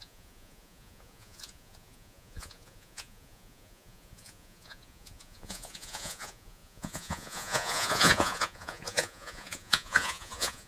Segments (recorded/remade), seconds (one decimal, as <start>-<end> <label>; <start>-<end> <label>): 0.0-10.7 remade